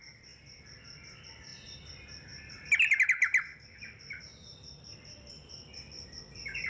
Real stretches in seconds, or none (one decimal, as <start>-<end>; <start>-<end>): 0.0-6.7